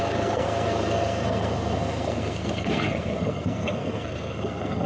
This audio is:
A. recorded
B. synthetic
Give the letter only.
B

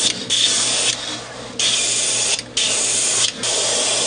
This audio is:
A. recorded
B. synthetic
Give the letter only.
A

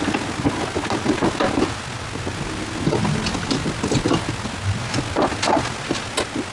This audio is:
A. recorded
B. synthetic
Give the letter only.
A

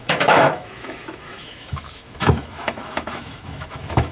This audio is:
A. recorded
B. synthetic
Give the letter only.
B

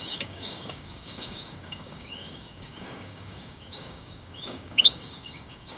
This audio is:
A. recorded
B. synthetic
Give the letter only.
B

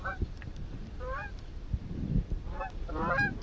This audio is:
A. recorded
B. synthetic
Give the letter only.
B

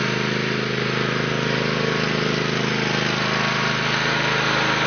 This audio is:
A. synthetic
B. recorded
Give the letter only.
B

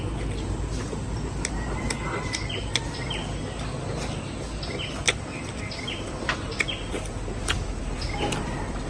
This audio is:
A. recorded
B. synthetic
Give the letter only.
A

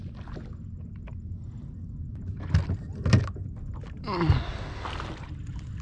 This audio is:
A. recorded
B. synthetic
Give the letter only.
A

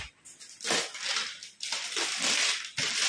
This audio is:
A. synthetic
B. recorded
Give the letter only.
B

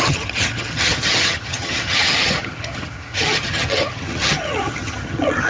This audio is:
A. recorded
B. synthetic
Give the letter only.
B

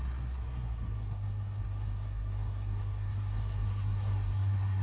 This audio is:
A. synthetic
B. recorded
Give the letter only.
A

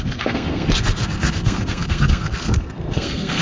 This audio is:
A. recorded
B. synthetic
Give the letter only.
B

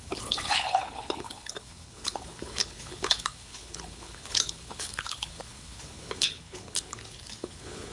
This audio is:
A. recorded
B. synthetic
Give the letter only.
B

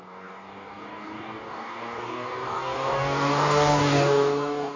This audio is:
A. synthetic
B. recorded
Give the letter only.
A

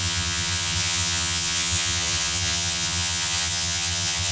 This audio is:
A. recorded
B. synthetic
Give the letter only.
B